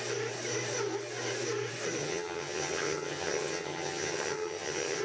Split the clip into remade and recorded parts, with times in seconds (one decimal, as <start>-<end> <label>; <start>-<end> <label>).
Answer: 0.0-2.0 recorded; 2.0-5.0 remade

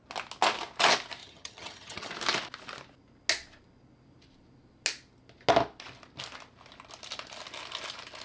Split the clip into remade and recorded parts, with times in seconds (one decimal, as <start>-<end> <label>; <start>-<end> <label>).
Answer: 0.0-1.2 recorded; 1.2-2.1 remade; 2.1-8.2 recorded

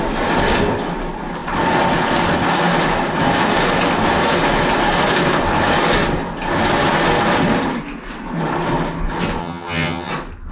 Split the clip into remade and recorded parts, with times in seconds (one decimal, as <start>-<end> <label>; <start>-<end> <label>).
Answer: 0.0-9.4 recorded; 9.4-10.1 remade; 10.1-10.5 recorded